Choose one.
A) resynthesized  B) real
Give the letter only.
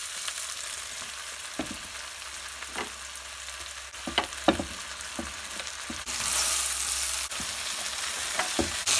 B